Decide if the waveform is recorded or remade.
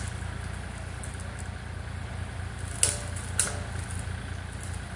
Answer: recorded